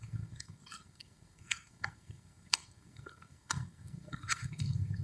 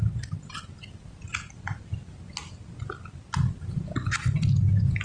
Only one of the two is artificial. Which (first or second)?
first